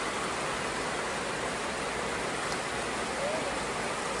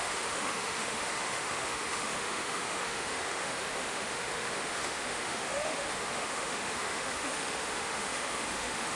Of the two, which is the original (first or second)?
first